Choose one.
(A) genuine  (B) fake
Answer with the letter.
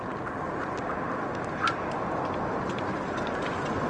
A